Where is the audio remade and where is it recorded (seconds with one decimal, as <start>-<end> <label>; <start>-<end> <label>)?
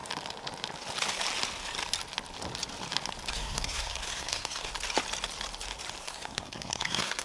0.0-3.3 recorded; 3.3-4.7 remade; 4.7-6.0 recorded; 6.0-7.2 remade